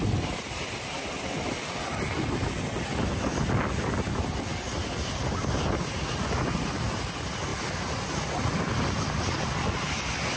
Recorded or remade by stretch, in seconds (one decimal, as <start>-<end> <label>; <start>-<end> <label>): 0.0-10.4 recorded

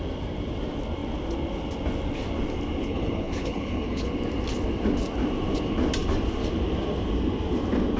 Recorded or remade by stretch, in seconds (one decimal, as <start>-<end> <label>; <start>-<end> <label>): 0.0-2.8 recorded; 2.8-4.1 remade; 4.1-8.0 recorded

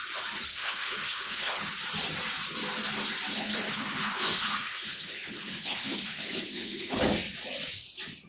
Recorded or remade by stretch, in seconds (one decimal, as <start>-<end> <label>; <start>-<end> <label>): 0.0-0.5 recorded; 0.5-1.7 remade; 1.7-3.3 recorded; 3.3-7.0 remade; 7.0-8.3 recorded

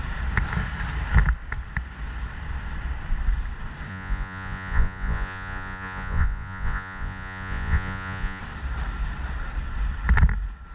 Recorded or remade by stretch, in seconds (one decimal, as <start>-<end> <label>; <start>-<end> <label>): 0.0-3.9 recorded; 3.9-8.4 remade; 8.4-10.7 recorded